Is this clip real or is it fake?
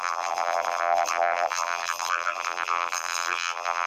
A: fake